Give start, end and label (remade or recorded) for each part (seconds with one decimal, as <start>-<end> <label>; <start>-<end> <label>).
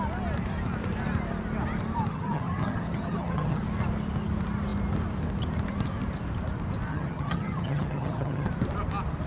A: 0.0-2.1 recorded; 2.1-3.6 remade; 3.6-6.9 recorded; 6.9-8.5 remade; 8.5-9.3 recorded